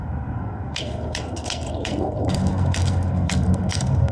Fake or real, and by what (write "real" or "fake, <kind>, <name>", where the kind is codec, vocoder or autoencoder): fake, codec, SNAC